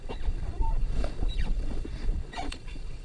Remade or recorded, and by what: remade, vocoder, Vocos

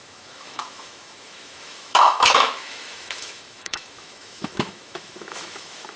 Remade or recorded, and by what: remade, autoencoder, DAC-VAE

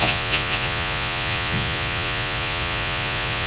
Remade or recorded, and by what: remade, vocoder, Vocos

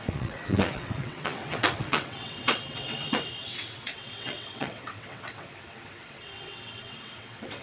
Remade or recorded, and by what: remade, vocoder, WaveNeXt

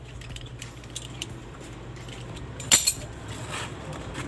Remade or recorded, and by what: remade, vocoder, BigVGAN v2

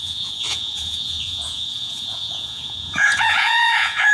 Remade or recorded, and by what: remade, vocoder, Vocos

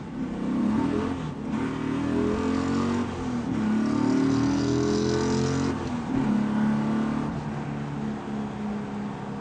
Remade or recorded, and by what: recorded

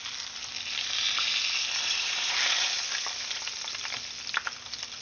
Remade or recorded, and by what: recorded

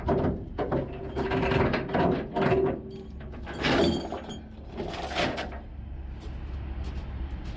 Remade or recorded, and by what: recorded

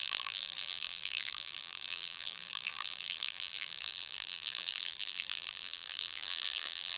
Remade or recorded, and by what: remade, vocoder, BigVGAN v2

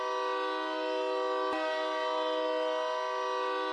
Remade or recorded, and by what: recorded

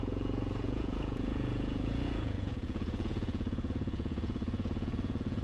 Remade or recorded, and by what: remade, vocoder, Vocos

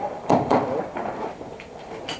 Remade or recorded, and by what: remade, vocoder, BigVGAN v2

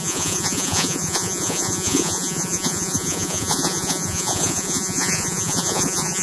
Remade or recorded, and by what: remade, vocoder, Vocos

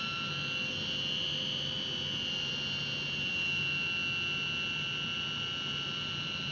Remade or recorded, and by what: recorded